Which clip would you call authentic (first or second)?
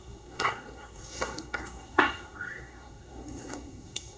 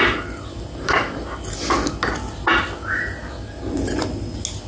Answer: second